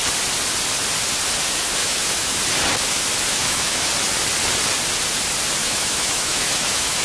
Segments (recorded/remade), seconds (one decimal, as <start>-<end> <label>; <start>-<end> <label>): 0.0-1.8 recorded; 1.8-2.4 remade; 2.4-3.3 recorded; 3.3-3.9 remade; 3.9-5.6 recorded; 5.6-7.0 remade

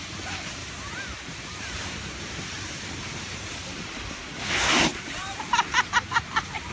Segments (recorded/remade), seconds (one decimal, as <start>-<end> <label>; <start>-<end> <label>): 0.0-0.6 recorded; 0.6-3.8 remade; 3.8-4.9 recorded; 4.9-6.7 remade

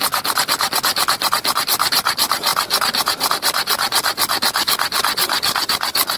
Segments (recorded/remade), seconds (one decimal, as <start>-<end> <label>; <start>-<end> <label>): 0.0-6.2 recorded

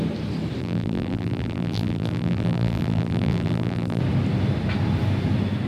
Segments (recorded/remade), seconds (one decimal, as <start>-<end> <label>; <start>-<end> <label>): 0.0-0.6 recorded; 0.6-4.0 remade; 4.0-5.7 recorded

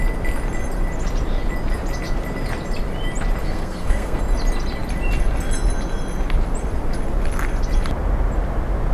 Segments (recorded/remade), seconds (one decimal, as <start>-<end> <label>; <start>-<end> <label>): 0.0-3.4 recorded; 3.4-4.2 remade; 4.2-8.9 recorded